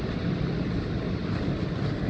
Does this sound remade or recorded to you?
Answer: recorded